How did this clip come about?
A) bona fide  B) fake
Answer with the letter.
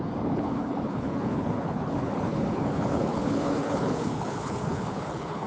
B